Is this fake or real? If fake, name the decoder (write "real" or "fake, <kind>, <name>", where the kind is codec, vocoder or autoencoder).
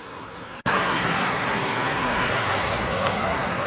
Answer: fake, codec, SNAC